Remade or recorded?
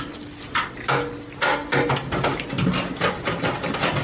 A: recorded